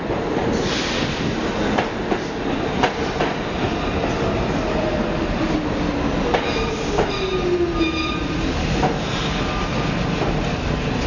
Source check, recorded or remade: recorded